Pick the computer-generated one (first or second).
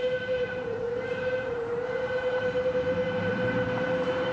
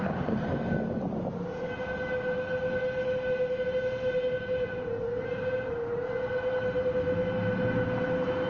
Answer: first